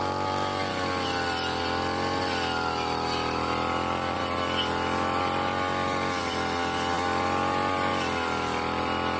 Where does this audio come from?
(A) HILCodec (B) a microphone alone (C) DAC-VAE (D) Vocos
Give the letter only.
B